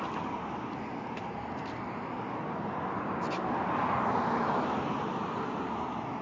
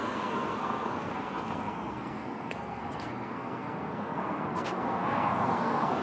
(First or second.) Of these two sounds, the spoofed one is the second